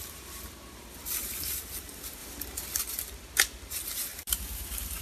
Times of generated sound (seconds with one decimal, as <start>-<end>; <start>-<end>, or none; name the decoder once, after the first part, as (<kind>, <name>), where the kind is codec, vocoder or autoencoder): none